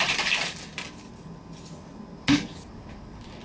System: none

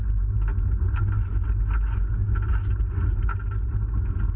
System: none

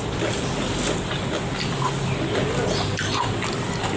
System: none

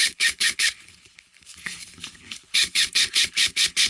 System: codec, HILCodec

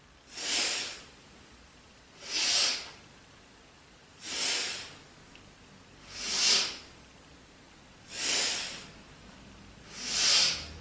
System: none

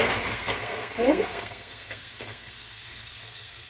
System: codec, SNAC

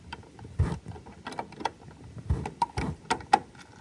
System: none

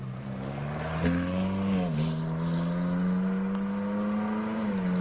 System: none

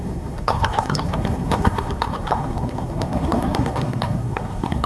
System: codec, SNAC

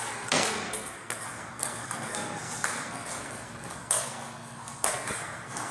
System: codec, SNAC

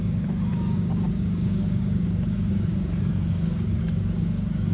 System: codec, DAC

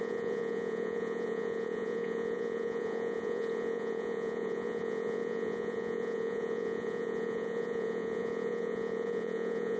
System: vocoder, Vocos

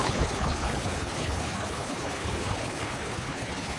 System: codec, HILCodec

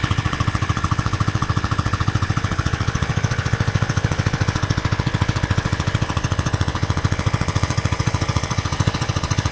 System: vocoder, WaveNeXt